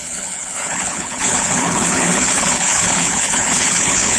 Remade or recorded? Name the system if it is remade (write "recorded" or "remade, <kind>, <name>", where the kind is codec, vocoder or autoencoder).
remade, codec, HILCodec